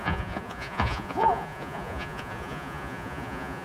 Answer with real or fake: fake